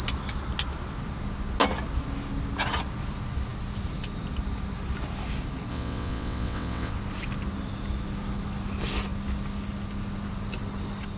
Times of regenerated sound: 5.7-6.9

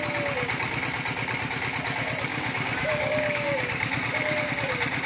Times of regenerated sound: 2.3-4.5

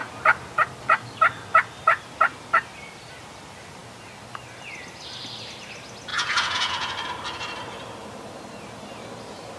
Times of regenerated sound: 6.1-6.9